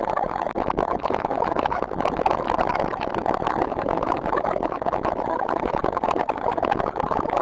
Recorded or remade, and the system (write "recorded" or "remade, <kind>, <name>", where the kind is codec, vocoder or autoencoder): remade, autoencoder, DAC-VAE